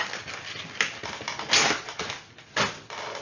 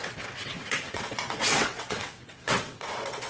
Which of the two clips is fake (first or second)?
second